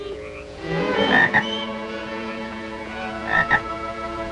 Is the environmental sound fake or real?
fake